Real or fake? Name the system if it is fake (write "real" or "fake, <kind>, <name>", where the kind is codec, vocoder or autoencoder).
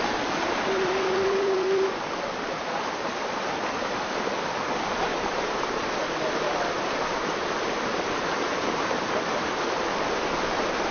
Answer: fake, vocoder, BigVGAN v2